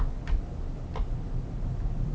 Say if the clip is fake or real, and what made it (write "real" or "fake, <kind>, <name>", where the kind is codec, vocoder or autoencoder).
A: real